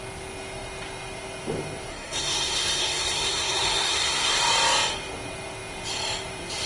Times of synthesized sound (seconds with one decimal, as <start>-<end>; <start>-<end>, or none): 1.9-4.3